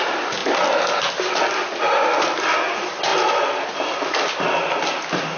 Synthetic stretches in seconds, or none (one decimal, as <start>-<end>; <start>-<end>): none